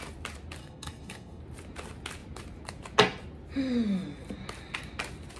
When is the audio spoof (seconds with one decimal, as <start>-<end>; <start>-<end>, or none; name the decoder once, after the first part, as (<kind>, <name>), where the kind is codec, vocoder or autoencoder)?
0.6-1.4 (codec, SNAC)